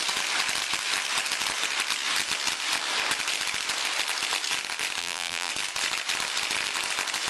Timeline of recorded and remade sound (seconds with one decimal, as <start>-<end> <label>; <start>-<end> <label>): 0.0-5.0 recorded; 5.0-5.5 remade; 5.5-7.3 recorded